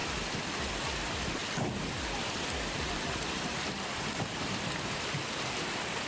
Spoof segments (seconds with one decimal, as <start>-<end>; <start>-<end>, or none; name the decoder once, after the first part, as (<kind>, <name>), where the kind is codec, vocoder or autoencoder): 0.6-6.1 (vocoder, BigVGAN v2)